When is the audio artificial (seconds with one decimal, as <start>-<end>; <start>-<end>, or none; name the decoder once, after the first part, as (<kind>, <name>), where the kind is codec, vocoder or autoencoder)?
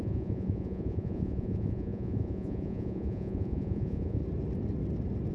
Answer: 0.0-4.2 (vocoder, Vocos)